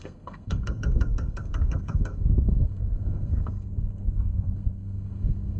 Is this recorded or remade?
remade